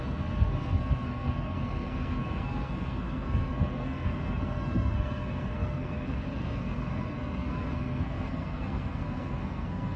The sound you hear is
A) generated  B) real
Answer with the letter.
A